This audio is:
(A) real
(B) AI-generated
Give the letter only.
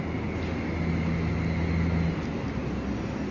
A